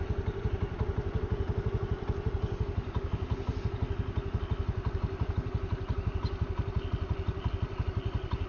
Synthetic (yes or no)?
no